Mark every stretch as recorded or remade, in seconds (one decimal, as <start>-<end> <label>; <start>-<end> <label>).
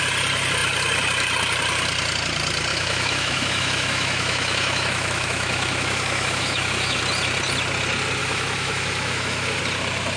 0.0-2.7 recorded; 2.7-7.0 remade; 7.0-8.2 recorded; 8.2-9.6 remade; 9.6-10.2 recorded